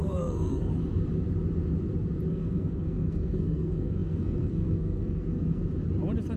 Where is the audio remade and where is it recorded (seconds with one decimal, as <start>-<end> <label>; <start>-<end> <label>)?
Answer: 0.0-0.7 remade; 0.7-2.3 recorded; 2.3-5.6 remade; 5.6-6.4 recorded